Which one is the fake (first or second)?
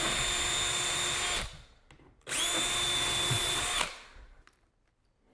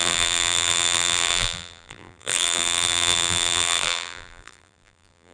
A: second